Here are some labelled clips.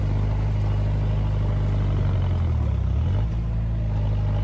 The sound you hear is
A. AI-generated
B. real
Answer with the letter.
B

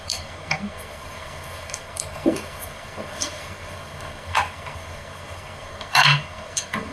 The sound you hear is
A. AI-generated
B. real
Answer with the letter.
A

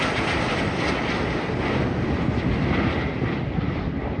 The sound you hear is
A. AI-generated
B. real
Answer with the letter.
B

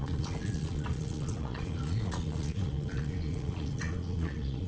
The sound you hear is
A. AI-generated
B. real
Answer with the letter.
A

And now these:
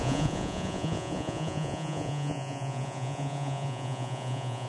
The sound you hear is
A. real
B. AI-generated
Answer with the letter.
B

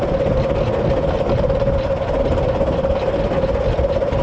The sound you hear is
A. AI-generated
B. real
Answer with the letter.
B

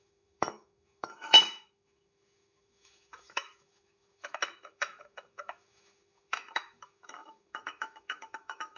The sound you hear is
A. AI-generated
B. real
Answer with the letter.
A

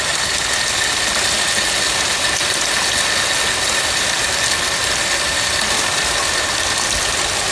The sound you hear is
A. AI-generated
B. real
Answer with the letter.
B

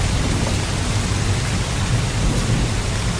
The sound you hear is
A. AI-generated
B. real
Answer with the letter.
B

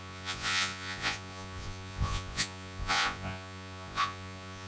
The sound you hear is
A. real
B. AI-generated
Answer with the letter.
B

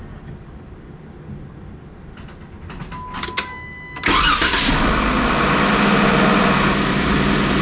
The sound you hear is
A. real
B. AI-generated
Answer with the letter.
A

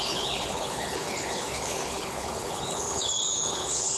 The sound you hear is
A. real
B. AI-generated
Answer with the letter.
B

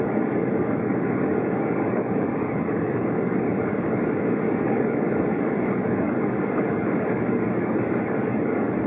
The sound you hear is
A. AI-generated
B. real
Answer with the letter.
A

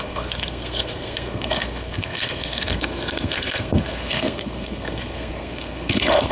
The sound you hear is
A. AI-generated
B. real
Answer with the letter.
A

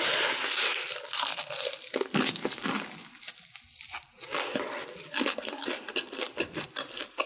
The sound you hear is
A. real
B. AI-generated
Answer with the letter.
A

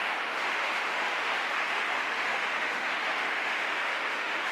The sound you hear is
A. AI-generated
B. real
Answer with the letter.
A